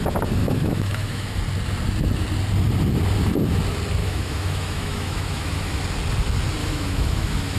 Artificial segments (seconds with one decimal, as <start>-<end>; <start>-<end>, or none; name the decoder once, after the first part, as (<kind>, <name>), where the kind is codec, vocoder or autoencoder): 0.4-1.4 (autoencoder, DAC-VAE); 4.0-5.8; 6.6-7.6